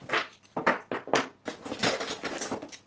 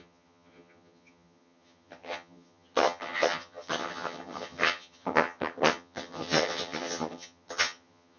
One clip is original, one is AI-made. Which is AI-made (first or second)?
second